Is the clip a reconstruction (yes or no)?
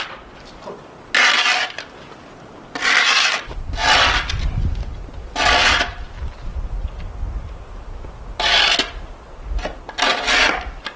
no